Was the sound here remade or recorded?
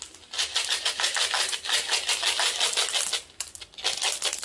recorded